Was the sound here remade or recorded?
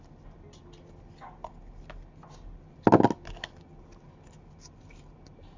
recorded